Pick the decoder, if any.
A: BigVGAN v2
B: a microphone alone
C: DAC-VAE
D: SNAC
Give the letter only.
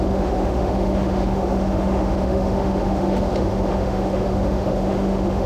C